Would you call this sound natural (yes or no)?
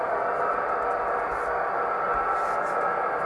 yes